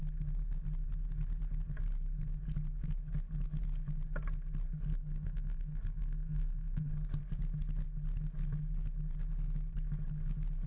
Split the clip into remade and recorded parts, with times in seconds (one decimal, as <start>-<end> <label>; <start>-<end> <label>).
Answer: 0.0-4.9 recorded; 4.9-6.9 remade; 6.9-10.7 recorded